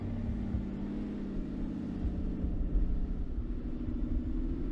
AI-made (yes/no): no